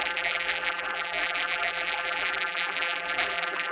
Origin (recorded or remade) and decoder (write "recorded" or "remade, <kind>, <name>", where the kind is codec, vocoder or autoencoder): remade, vocoder, BigVGAN v2